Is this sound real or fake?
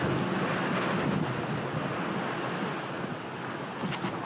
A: real